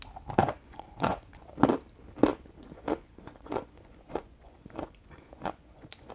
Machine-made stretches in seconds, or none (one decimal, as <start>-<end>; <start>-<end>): 0.4-1.5; 2.3-6.1